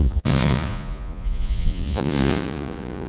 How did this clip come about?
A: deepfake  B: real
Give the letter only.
A